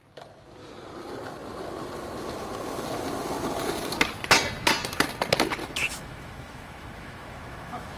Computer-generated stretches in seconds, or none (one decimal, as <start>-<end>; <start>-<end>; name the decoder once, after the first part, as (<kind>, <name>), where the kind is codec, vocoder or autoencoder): 5.6-8.0 (autoencoder, DAC-VAE)